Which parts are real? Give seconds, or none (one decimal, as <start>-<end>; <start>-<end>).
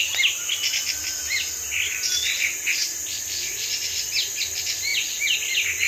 0.0-5.9